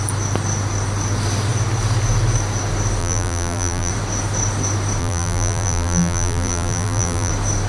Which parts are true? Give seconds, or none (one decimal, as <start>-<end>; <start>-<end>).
0.0-3.0; 3.9-5.0; 7.3-7.7